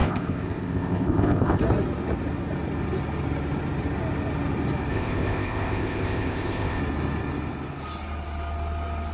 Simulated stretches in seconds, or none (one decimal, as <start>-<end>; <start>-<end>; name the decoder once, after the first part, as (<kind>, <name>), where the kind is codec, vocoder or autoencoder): 0.0-1.6 (codec, ZipCodec); 4.9-6.8